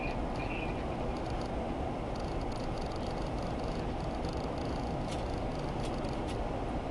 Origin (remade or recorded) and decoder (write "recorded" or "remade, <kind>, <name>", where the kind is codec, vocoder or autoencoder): recorded